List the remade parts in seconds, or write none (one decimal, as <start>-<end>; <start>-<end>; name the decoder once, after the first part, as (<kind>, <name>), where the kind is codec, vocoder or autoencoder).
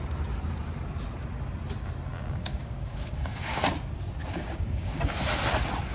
2.1-3.6 (codec, DAC); 4.2-5.0